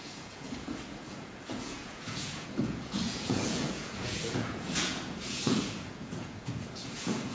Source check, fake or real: fake